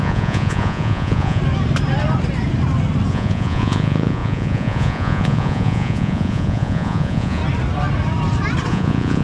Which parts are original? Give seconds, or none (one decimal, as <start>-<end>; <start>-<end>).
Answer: 1.4-3.1; 7.4-8.7